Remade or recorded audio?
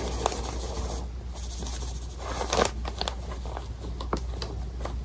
recorded